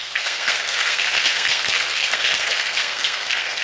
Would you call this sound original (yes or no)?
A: no